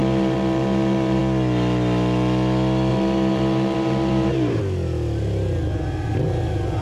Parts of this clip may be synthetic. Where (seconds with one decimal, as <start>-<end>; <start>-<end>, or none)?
0.0-1.2; 2.9-4.6